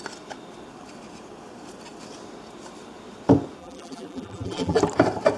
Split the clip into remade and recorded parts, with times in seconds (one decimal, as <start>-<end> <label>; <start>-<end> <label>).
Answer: 0.0-3.6 recorded; 3.6-4.8 remade; 4.8-5.4 recorded